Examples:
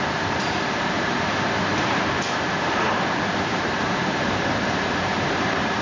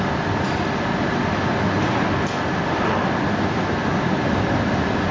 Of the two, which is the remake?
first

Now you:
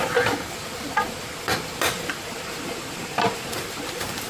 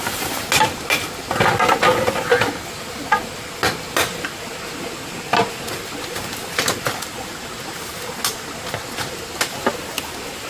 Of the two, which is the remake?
first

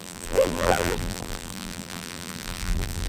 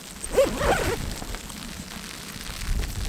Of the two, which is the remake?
first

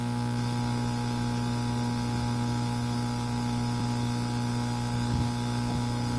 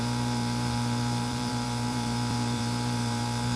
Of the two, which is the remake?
second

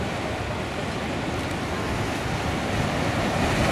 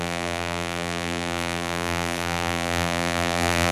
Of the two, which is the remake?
second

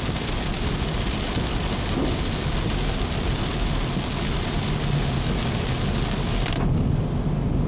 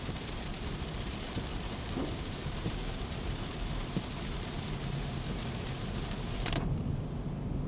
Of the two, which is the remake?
second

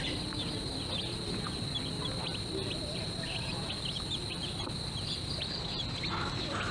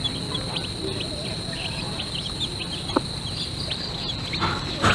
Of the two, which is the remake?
second